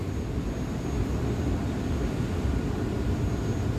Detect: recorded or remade recorded